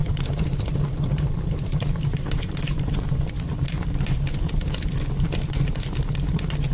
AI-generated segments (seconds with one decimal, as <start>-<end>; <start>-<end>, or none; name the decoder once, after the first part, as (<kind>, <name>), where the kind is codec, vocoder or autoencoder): 0.0-3.0 (vocoder, BigVGAN v2)